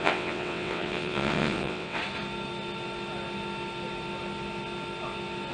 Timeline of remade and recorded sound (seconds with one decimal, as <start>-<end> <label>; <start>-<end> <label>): 0.0-2.0 remade; 2.0-5.5 recorded